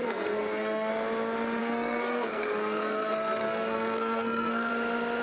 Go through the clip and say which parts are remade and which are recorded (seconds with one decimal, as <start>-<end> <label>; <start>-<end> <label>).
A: 0.0-0.9 remade; 0.9-1.6 recorded; 1.6-4.7 remade; 4.7-5.2 recorded